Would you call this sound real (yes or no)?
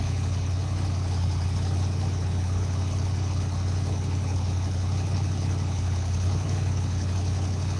no